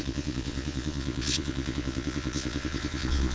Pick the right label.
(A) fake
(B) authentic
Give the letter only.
A